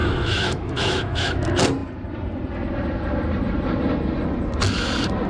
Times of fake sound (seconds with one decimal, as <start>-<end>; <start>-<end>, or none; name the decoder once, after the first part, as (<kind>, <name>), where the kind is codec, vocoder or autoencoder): 0.0-1.4 (autoencoder, DAC-VAE)